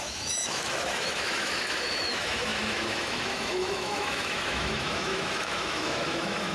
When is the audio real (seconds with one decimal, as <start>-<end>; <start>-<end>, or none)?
none